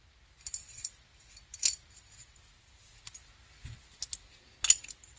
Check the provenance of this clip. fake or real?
real